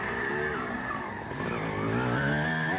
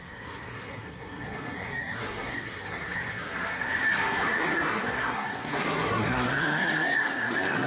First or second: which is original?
first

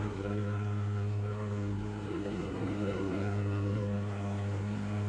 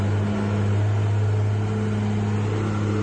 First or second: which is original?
second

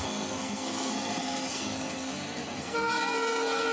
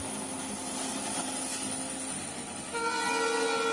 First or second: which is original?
second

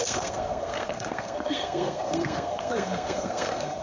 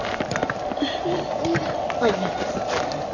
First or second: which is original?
second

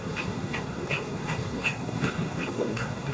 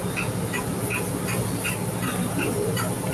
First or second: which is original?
second